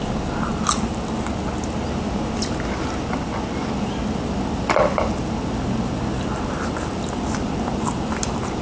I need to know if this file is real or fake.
real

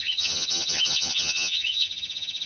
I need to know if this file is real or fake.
fake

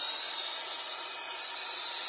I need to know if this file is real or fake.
real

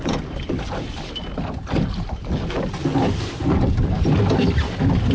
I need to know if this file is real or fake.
real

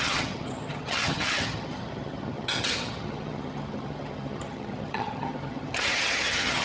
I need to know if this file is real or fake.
fake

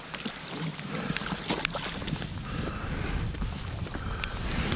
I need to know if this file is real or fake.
real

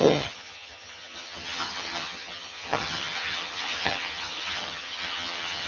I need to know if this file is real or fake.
fake